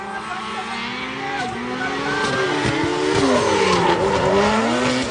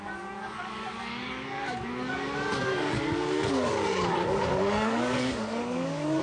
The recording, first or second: first